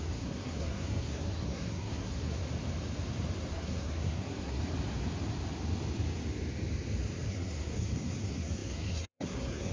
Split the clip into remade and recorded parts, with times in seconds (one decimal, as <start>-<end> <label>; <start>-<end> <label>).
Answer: 0.0-2.4 remade; 2.4-3.5 recorded; 3.5-4.6 remade; 4.6-7.3 recorded; 7.3-9.7 remade